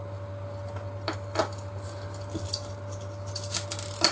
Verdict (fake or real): real